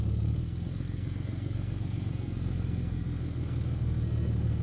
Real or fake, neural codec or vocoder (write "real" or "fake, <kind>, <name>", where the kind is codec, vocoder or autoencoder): fake, codec, SNAC